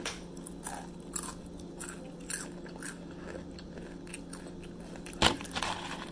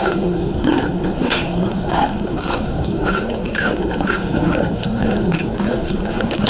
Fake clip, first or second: second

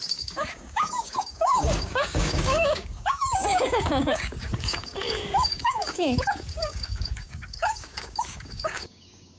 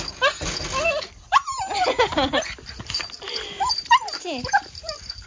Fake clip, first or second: first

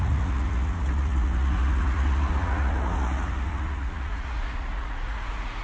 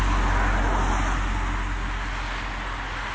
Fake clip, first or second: first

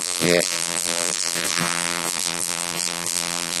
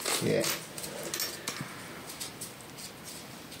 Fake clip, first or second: first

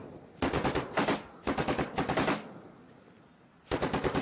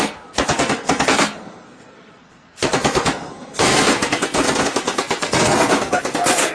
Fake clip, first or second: second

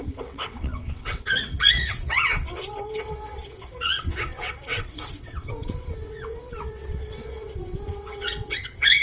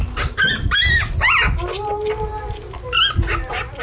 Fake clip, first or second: first